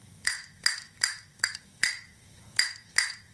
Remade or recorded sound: remade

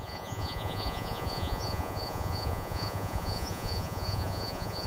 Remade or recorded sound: remade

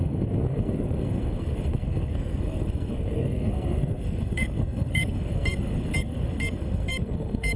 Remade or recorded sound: remade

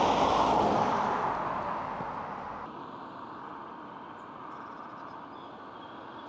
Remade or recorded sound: recorded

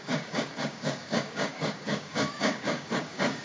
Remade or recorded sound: remade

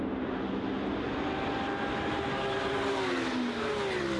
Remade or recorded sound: recorded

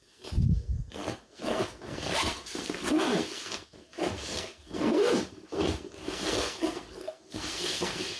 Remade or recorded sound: remade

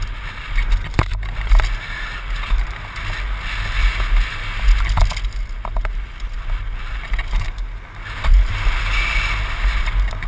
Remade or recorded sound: recorded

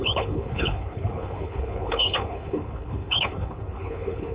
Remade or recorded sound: remade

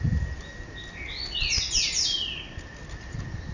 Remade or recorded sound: recorded